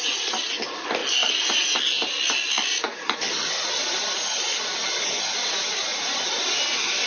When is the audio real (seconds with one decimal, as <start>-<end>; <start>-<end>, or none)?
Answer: 0.0-7.1